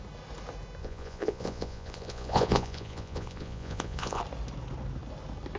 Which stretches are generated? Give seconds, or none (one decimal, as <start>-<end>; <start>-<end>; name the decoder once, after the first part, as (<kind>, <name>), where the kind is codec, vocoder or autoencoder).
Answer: 0.8-4.2 (vocoder, Vocos)